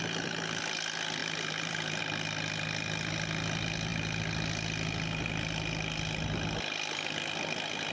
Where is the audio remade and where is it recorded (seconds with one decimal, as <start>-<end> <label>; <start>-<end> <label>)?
0.0-1.2 recorded; 1.2-2.0 remade; 2.0-7.9 recorded